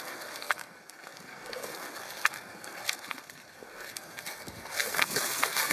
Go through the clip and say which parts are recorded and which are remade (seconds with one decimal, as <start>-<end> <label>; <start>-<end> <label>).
0.0-5.7 remade